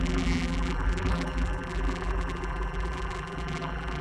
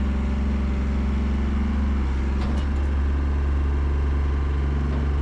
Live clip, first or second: second